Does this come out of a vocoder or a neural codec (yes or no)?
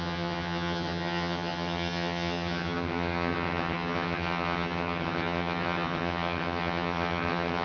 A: yes